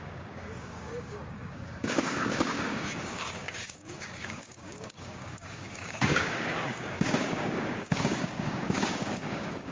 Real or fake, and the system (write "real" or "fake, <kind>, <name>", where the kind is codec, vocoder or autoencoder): fake, codec, DAC